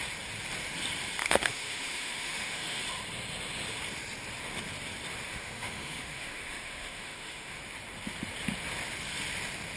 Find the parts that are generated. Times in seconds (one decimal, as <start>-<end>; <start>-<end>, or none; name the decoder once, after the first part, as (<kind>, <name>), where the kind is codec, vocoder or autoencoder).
1.2-2.8 (autoencoder, DAC-VAE); 5.3-7.6